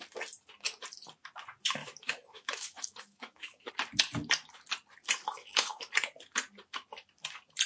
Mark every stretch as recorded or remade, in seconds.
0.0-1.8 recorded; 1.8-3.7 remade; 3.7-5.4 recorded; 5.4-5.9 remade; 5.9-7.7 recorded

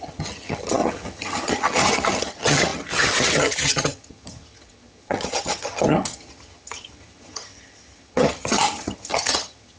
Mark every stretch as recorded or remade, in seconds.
0.0-9.8 remade

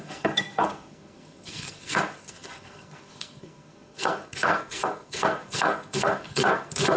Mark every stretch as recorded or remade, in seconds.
0.0-7.0 remade

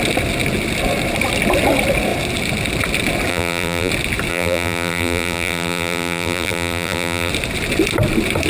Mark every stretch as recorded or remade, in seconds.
0.0-3.3 recorded; 3.3-3.9 remade; 3.9-4.3 recorded; 4.3-7.3 remade; 7.3-8.5 recorded